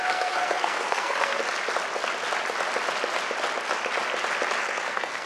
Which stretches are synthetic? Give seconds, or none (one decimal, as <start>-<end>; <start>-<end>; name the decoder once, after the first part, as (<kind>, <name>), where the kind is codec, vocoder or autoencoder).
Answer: 0.0-1.4 (codec, SNAC); 4.6-5.3